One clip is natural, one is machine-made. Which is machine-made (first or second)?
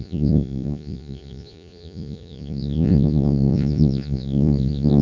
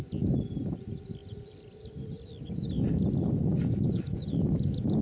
first